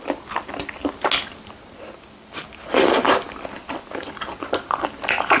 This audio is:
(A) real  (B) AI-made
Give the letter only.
A